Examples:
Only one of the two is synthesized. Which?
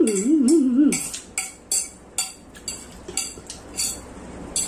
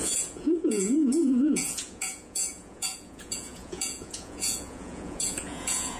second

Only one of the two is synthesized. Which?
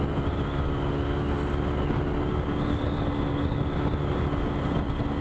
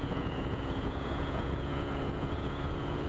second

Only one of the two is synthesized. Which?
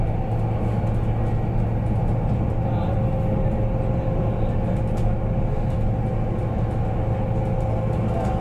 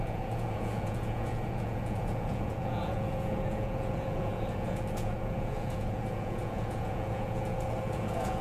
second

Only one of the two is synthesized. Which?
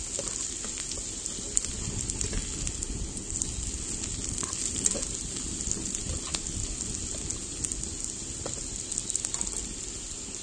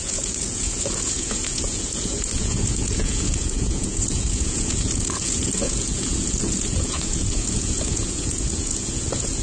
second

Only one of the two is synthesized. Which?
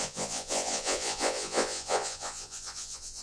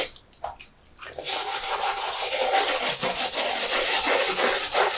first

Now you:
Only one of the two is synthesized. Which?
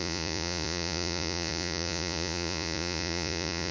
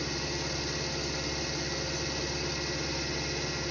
first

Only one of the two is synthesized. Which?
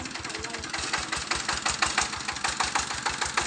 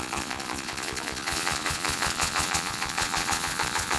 second